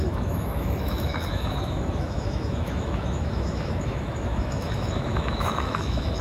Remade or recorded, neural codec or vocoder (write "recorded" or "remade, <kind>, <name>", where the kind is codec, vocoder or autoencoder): remade, autoencoder, DAC-VAE